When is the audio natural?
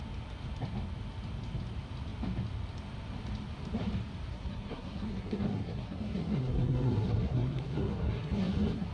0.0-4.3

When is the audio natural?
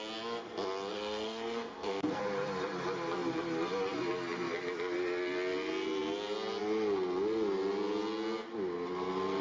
0.0-0.9; 2.2-9.4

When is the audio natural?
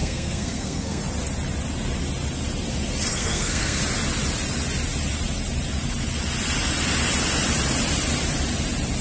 1.0-3.1; 3.8-9.0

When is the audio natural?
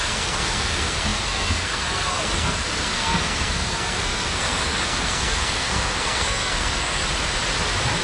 7.0-8.0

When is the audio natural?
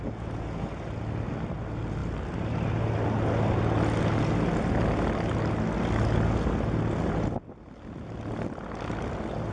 0.0-9.5